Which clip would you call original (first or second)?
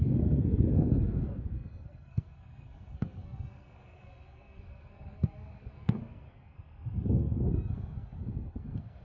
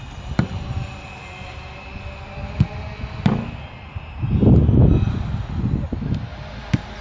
second